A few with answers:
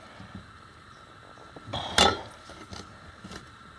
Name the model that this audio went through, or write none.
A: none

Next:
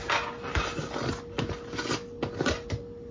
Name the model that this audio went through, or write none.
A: none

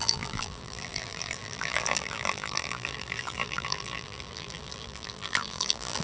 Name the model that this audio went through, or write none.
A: vocoder, BigVGAN v2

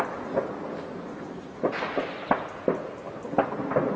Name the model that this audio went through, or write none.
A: none